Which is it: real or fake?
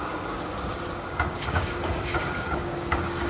fake